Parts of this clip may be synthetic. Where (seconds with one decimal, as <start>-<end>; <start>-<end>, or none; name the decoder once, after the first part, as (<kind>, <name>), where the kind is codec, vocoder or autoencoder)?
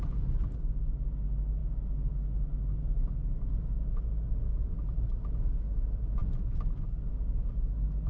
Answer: none